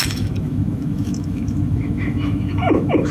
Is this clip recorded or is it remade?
remade